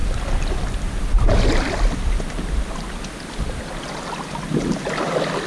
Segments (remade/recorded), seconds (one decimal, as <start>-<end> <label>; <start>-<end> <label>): 0.0-3.0 remade; 3.0-5.5 recorded